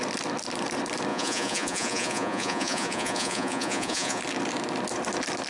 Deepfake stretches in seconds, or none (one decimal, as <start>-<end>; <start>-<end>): 1.1-4.2